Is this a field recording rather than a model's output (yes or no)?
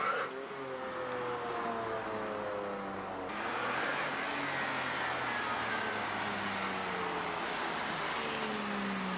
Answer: yes